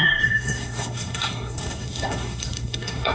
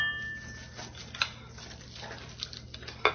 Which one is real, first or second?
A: second